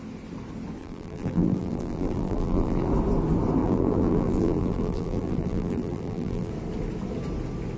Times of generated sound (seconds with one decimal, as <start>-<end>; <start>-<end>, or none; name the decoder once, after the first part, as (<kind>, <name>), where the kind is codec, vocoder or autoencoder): 0.8-2.9 (vocoder, BigVGAN v2); 3.6-6.5

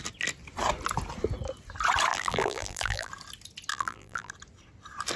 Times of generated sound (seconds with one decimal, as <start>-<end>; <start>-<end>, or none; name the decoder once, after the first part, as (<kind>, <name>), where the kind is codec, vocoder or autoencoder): 2.1-3.1 (vocoder, BigVGAN v2); 3.7-4.3